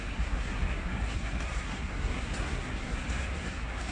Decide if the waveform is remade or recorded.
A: remade